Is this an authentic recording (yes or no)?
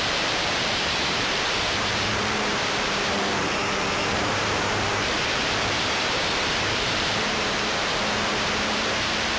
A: no